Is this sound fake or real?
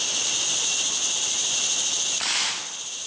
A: real